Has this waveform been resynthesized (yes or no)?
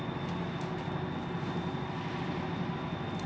no